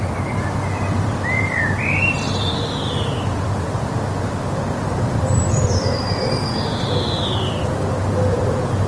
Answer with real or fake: fake